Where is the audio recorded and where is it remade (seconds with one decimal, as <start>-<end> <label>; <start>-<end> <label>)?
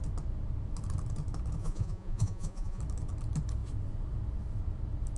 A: 0.0-1.6 recorded; 1.6-2.8 remade; 2.8-5.2 recorded